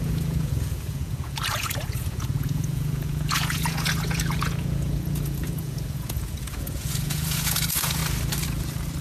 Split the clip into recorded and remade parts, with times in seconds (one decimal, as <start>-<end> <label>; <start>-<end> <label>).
0.0-8.0 remade; 8.0-9.0 recorded